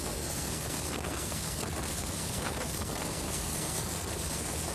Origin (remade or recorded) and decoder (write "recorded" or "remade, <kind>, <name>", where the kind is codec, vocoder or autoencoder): remade, codec, SNAC